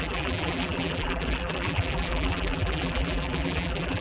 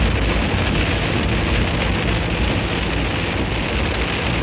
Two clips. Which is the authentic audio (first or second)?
second